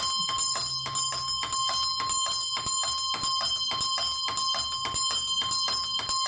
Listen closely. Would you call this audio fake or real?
real